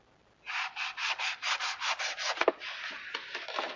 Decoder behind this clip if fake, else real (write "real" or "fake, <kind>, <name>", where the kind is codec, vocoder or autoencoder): real